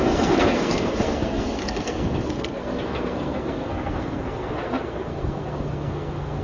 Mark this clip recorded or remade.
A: remade